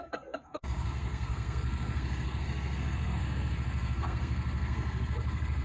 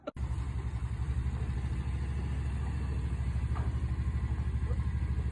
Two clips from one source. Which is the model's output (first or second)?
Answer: first